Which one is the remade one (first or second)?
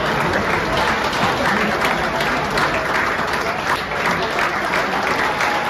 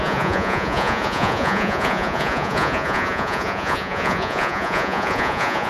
second